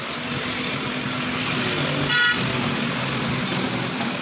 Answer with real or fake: real